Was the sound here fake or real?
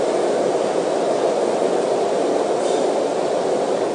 real